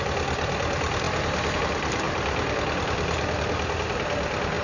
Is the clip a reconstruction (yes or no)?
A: no